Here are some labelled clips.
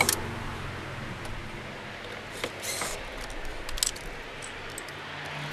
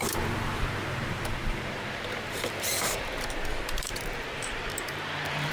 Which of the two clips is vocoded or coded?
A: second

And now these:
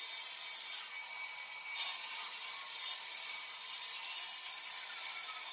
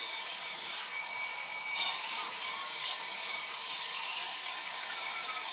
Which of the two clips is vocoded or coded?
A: second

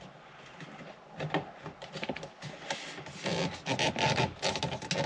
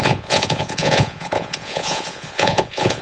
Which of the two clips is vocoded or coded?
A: second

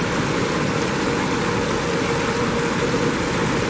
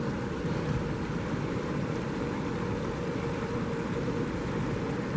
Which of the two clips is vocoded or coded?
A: second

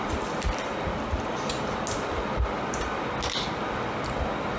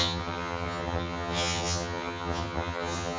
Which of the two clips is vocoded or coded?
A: second